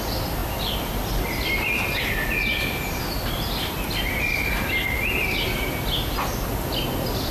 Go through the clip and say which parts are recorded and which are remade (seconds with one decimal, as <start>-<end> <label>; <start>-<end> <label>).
0.0-7.3 recorded